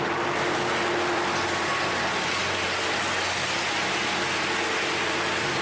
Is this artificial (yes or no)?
no